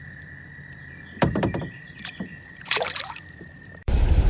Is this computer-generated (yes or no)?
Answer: yes